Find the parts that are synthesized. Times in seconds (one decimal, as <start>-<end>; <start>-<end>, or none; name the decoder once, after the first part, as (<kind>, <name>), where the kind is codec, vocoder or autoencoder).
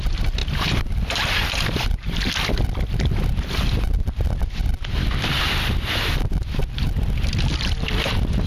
none